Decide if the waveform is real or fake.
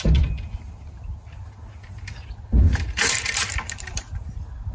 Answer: real